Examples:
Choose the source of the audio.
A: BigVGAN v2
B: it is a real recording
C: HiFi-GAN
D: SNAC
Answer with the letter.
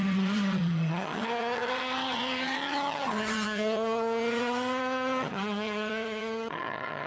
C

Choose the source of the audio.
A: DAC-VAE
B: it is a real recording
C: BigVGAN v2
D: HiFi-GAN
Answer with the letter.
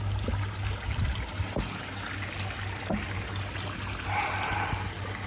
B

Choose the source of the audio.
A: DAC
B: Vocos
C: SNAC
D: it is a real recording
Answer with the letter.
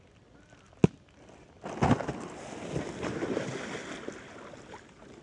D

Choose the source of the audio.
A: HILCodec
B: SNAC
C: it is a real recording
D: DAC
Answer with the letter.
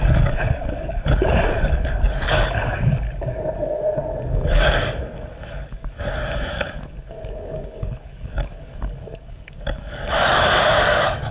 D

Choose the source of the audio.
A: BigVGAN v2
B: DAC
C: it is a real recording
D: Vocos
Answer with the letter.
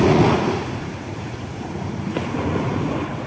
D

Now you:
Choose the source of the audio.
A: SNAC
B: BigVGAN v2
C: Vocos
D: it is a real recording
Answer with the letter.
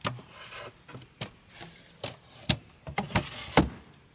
D